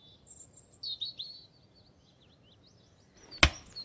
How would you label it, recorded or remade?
recorded